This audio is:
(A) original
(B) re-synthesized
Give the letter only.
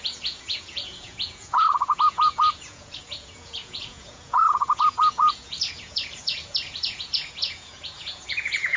B